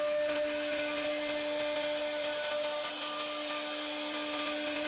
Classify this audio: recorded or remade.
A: recorded